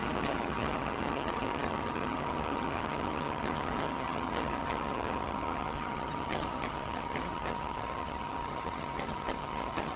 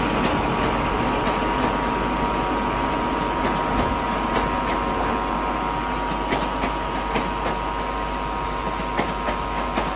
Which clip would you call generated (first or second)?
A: first